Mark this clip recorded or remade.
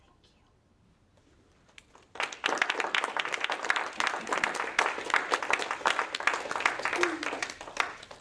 recorded